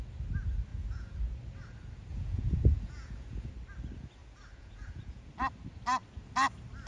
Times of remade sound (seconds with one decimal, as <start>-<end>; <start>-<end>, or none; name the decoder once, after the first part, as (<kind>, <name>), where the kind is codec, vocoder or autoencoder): 0.7-1.2 (vocoder, Vocos); 2.1-3.5; 4.2-5.3